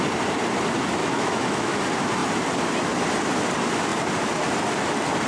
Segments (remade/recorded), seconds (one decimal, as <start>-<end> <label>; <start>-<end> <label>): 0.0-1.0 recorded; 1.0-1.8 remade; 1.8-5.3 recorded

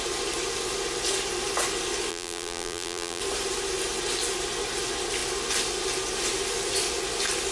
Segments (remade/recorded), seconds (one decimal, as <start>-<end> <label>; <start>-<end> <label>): 0.0-2.1 recorded; 2.1-3.2 remade; 3.2-7.5 recorded

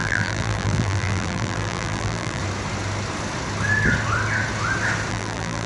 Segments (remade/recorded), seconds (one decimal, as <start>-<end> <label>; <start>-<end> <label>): 0.0-2.4 remade; 2.4-5.1 recorded; 5.1-5.7 remade

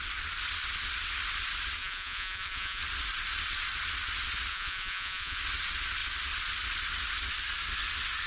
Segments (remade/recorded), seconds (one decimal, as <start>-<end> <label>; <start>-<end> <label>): 0.0-1.8 recorded; 1.8-2.8 remade; 2.8-4.5 recorded; 4.5-5.4 remade; 5.4-8.3 recorded

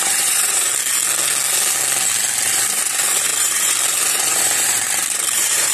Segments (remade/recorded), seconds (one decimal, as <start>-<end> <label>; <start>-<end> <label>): 0.0-0.7 remade; 0.7-2.5 recorded; 2.5-5.7 remade

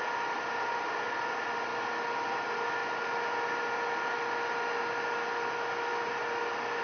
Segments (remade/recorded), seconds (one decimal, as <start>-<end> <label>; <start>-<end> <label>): 0.0-6.8 recorded